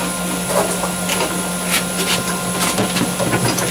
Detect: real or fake real